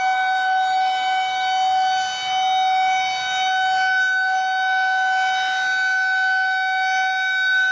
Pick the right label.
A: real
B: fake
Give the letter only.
A